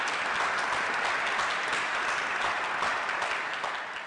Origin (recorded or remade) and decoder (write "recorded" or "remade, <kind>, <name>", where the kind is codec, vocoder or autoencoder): recorded